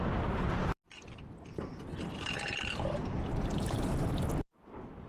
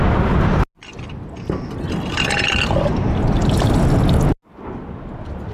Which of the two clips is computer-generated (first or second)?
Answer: first